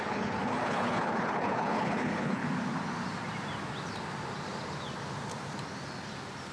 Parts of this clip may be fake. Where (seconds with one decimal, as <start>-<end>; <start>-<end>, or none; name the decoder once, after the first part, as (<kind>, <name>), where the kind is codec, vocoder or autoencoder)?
0.0-2.4 (codec, HILCodec)